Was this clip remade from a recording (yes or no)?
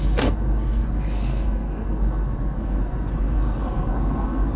yes